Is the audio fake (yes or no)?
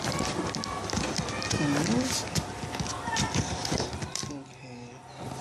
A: no